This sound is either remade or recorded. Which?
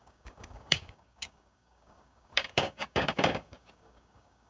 remade